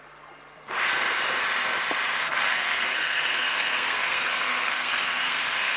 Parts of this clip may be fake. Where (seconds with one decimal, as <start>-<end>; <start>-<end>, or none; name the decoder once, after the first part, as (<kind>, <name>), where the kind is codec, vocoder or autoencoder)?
2.2-5.8 (codec, SNAC)